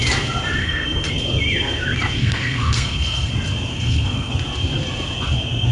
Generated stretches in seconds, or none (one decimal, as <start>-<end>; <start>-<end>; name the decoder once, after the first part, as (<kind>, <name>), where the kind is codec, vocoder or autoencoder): 0.6-1.1 (codec, SNAC); 2.2-3.3; 3.7-4.3